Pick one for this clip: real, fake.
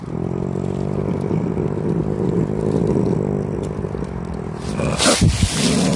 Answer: real